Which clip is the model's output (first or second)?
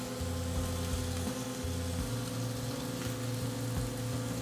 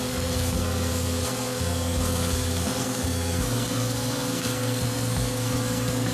second